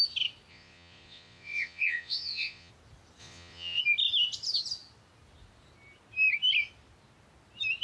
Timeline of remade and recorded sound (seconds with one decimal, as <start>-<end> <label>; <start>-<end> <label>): 0.0-0.5 recorded; 0.5-2.7 remade; 2.7-3.2 recorded; 3.2-3.8 remade; 3.8-7.8 recorded